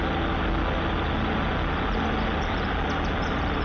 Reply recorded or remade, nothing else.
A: recorded